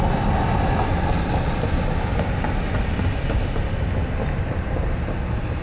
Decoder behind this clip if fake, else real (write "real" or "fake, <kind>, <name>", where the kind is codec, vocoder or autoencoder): real